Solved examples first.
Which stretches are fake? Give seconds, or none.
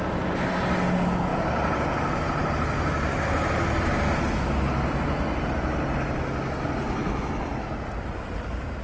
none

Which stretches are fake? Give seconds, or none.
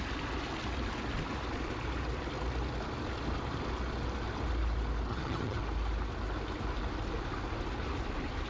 5.1-5.6 (vocoder, HiFi-GAN)